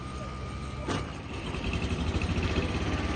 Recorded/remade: recorded